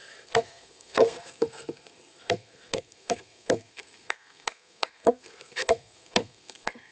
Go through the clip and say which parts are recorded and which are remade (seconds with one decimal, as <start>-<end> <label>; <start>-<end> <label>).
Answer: 0.0-6.9 remade

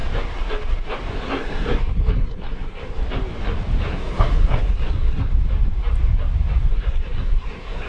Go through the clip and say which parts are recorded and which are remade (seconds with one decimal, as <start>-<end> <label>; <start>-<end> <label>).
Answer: 0.0-1.1 recorded; 1.1-3.1 remade; 3.1-3.9 recorded; 3.9-5.3 remade; 5.3-6.7 recorded; 6.7-7.9 remade

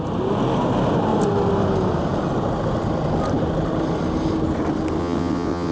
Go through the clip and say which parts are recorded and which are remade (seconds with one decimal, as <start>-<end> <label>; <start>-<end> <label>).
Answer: 0.0-5.0 recorded; 5.0-5.7 remade

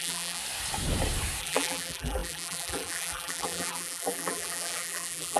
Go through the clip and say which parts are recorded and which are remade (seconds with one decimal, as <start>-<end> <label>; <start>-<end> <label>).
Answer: 0.0-0.4 remade; 0.4-1.4 recorded; 1.4-5.4 remade

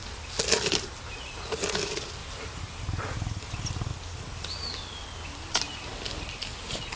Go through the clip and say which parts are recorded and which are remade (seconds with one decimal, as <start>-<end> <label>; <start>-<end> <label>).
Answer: 0.0-2.2 recorded; 2.2-3.5 remade; 3.5-7.0 recorded

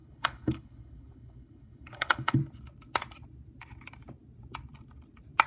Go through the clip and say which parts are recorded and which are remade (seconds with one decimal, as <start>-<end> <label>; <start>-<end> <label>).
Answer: 0.0-2.4 remade; 2.4-5.5 recorded